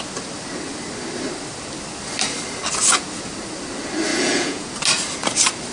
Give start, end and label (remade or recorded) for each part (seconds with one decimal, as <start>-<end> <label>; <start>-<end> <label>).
0.0-4.1 recorded; 4.1-4.7 remade; 4.7-5.7 recorded